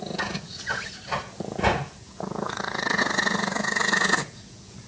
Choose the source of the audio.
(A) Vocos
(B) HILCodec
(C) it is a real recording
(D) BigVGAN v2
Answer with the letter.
A